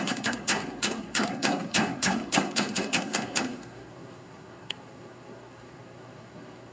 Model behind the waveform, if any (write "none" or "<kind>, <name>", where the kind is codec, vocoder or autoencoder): codec, SNAC